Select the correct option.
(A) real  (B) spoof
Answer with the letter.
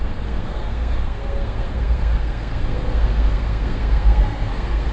B